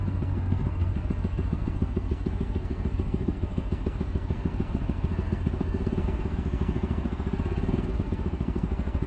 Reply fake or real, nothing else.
fake